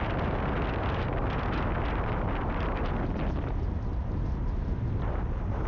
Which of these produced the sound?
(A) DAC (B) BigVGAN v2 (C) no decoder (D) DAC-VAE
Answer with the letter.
C